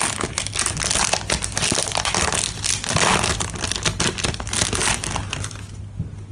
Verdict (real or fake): real